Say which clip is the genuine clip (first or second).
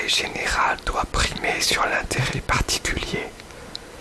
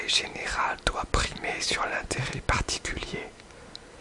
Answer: second